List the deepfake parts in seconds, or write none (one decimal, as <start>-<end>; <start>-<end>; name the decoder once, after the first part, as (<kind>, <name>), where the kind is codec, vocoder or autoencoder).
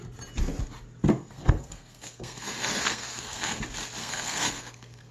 1.1-3.6 (codec, SNAC); 4.0-5.1